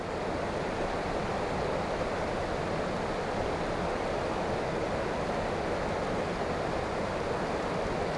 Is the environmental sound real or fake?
real